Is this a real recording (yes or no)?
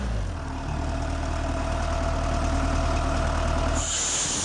yes